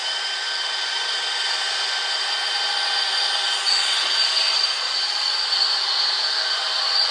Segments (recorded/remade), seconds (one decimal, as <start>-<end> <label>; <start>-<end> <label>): 0.0-7.1 recorded